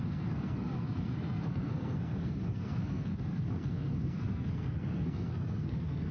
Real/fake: fake